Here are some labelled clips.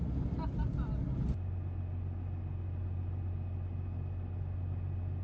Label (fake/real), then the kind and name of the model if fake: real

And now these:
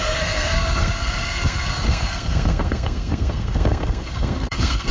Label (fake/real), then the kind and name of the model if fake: fake, codec, SNAC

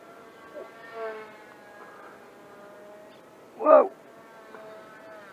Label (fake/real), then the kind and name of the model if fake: real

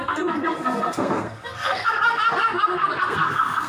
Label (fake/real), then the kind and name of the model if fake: fake, codec, SNAC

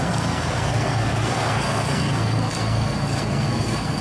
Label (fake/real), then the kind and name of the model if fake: fake, codec, SNAC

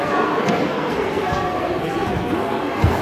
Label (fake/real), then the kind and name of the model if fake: fake, codec, SNAC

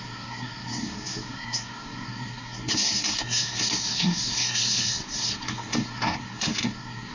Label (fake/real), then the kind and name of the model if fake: fake, codec, SNAC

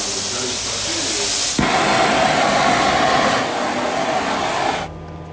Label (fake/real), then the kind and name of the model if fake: real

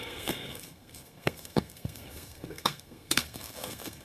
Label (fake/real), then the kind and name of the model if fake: fake, codec, SNAC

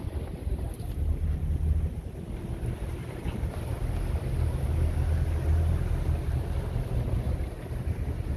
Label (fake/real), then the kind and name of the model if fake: real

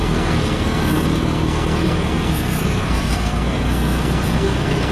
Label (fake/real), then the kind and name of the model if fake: fake, codec, SNAC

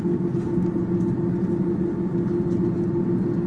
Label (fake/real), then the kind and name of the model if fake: real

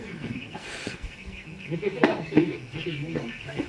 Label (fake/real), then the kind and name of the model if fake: fake, codec, SNAC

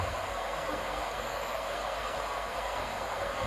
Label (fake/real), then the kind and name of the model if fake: fake, codec, SNAC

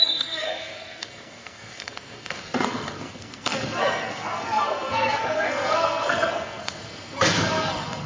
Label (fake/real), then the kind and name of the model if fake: fake, codec, SNAC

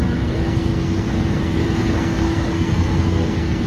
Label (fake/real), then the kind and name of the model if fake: fake, codec, SNAC